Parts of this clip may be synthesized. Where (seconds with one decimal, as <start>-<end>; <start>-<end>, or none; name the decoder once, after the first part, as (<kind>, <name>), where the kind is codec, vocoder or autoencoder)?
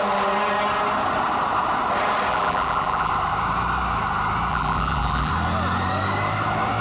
2.3-3.1 (vocoder, BigVGAN v2); 4.5-5.3